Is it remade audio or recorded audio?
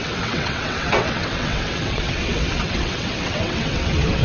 remade